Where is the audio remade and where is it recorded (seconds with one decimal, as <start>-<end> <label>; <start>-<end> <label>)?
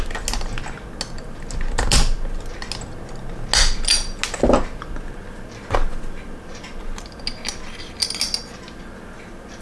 0.0-9.6 recorded